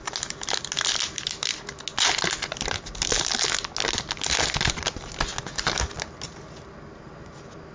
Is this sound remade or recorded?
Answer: recorded